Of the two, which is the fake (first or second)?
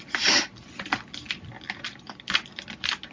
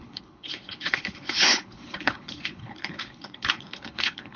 second